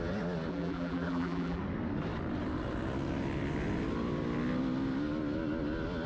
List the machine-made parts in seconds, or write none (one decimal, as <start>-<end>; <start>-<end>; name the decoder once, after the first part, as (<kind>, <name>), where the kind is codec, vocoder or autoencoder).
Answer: 0.5-1.6 (vocoder, BigVGAN v2)